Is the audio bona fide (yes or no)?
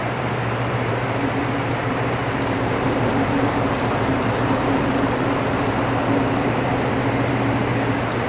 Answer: no